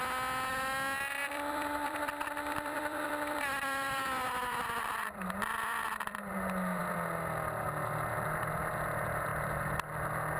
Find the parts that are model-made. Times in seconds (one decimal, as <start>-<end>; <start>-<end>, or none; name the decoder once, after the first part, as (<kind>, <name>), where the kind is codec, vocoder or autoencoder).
1.2-6.3 (vocoder, BigVGAN v2)